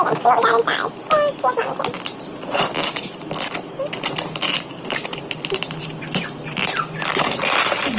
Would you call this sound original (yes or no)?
yes